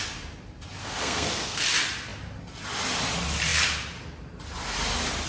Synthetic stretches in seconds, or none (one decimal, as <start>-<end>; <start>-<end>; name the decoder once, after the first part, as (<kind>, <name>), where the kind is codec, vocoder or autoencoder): 0.8-1.6 (codec, SNAC)

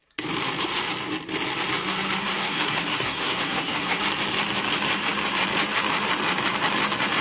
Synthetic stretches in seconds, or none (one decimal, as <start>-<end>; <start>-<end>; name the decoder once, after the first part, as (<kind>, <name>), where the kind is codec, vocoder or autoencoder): 2.2-4.0 (codec, SNAC)

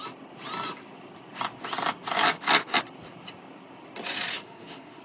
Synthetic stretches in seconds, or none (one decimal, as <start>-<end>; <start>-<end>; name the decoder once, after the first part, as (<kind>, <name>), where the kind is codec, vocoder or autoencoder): 4.3-5.0 (autoencoder, DAC-VAE)

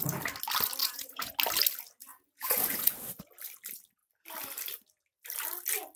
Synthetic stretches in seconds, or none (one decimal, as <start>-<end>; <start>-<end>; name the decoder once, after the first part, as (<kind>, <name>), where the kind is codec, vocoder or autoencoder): 0.8-1.3 (vocoder, Vocos); 2.1-3.0